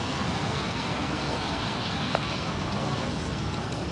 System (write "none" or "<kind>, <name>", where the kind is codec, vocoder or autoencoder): codec, SNAC